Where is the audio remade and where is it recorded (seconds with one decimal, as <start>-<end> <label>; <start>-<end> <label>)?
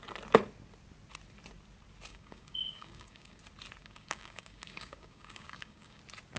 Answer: 0.0-2.1 recorded; 2.1-3.4 remade; 3.4-3.8 recorded; 3.8-6.0 remade; 6.0-6.4 recorded